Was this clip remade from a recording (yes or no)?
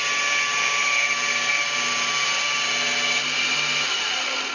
no